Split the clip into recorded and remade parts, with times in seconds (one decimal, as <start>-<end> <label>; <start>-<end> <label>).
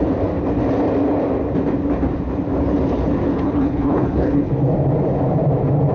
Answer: 0.0-3.3 recorded; 3.3-4.5 remade; 4.5-5.9 recorded